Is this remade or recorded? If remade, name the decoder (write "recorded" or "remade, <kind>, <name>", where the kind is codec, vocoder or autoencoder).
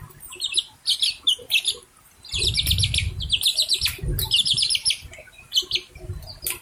recorded